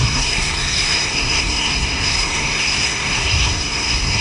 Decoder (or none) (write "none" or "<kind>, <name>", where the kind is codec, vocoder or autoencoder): codec, SNAC